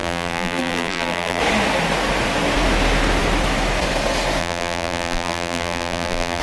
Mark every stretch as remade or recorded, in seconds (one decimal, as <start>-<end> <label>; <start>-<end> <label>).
0.0-1.4 remade; 1.4-4.4 recorded; 4.4-6.4 remade